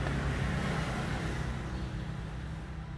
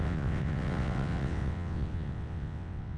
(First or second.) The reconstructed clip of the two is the second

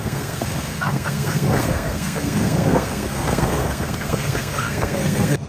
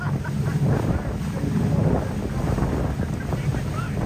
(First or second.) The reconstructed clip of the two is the first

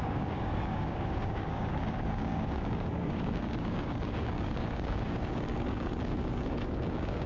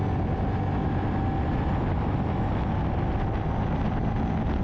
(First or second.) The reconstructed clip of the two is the first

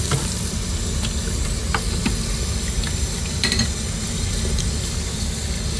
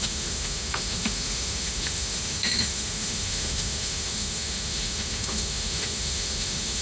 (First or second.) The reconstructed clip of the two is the second